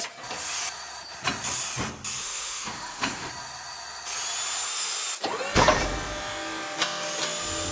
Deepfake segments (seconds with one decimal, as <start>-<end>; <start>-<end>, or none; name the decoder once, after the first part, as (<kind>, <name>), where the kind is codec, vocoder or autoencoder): 2.2-3.3 (autoencoder, DAC-VAE)